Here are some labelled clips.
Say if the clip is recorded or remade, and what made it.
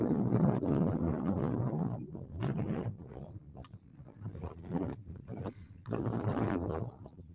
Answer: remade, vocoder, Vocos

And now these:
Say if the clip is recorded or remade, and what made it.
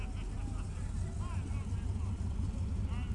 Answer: recorded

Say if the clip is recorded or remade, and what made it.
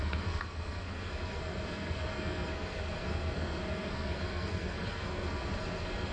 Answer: remade, codec, SNAC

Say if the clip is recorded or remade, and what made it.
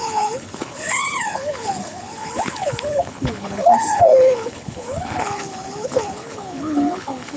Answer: remade, codec, HILCodec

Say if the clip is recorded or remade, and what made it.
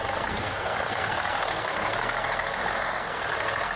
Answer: remade, codec, SNAC